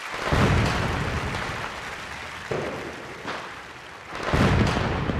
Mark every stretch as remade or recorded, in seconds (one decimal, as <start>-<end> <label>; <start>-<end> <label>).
0.0-5.2 recorded